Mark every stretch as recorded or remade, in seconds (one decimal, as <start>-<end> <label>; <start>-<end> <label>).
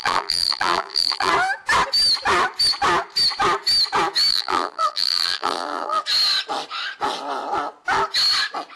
0.0-1.3 remade; 1.3-4.3 recorded; 4.3-6.0 remade; 6.0-8.8 recorded